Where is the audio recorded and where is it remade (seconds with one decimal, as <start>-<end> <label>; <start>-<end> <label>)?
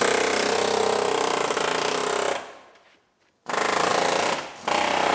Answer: 0.0-5.1 recorded